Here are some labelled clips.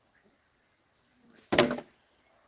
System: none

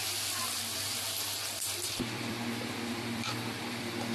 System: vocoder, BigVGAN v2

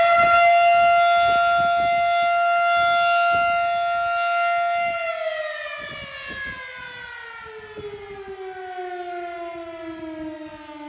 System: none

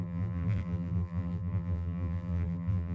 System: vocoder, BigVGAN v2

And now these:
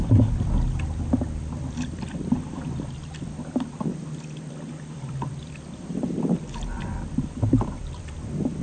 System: vocoder, BigVGAN v2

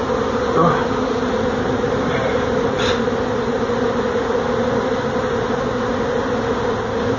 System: none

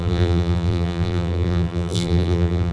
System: vocoder, BigVGAN v2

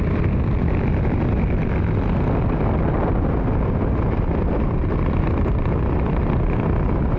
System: vocoder, BigVGAN v2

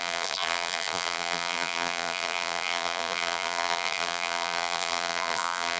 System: vocoder, BigVGAN v2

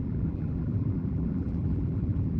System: vocoder, BigVGAN v2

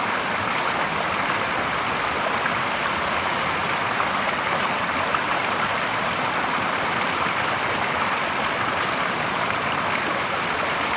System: vocoder, BigVGAN v2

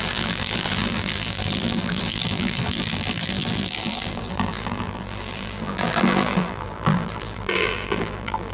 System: vocoder, BigVGAN v2